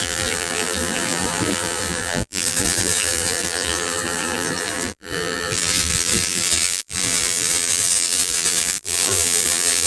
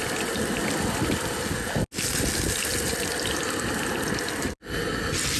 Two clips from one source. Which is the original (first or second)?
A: second